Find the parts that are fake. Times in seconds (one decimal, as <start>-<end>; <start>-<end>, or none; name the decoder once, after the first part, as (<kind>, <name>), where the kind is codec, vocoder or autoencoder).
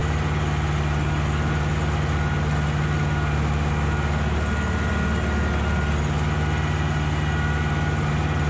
none